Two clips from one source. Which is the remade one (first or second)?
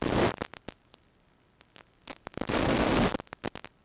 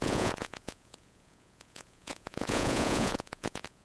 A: second